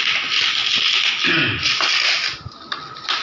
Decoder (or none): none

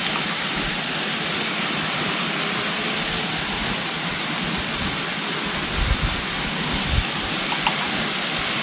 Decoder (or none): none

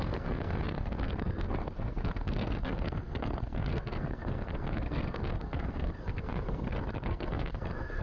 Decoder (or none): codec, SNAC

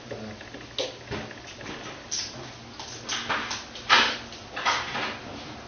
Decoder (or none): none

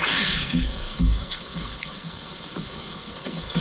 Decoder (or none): codec, SNAC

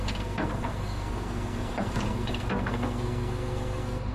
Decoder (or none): codec, SNAC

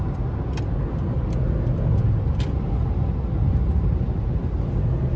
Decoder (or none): none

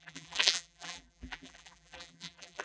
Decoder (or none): vocoder, BigVGAN v2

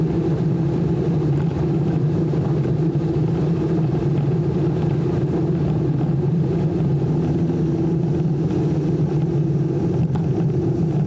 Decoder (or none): none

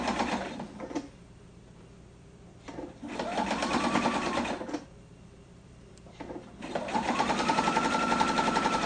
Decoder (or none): vocoder, BigVGAN v2